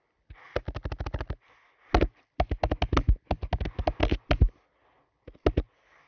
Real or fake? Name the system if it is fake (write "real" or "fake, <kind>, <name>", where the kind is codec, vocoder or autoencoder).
real